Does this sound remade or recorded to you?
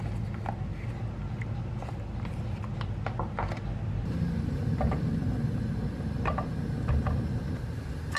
recorded